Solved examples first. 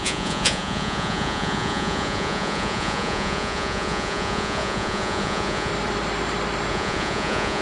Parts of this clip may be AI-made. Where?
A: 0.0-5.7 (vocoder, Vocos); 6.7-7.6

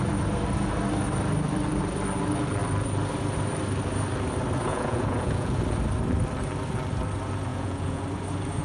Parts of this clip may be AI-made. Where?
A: 4.7-5.6 (vocoder, Vocos); 7.5-8.0

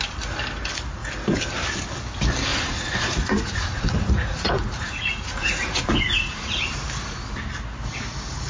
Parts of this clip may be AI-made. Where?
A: 2.5-6.6 (vocoder, Vocos)

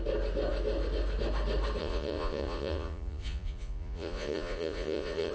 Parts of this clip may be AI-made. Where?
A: 1.8-5.3 (vocoder, Vocos)

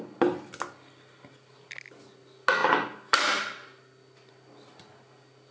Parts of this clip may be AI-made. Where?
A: none

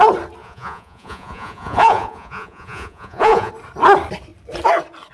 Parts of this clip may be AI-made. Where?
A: 0.4-3.5 (vocoder, Vocos)

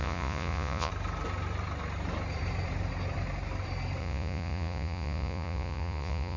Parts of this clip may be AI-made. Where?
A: 0.0-0.9 (vocoder, Vocos); 4.0-6.4

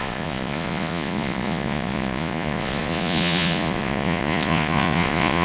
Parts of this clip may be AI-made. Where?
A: 0.0-5.4 (vocoder, Vocos)